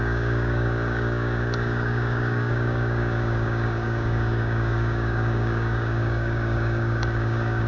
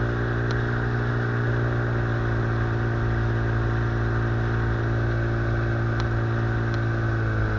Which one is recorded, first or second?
second